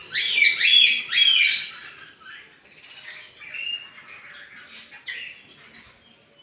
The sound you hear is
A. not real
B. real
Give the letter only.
B